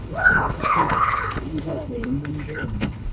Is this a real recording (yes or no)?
no